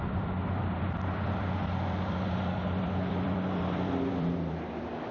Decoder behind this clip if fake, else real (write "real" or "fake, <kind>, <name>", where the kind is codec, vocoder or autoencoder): fake, vocoder, BigVGAN v2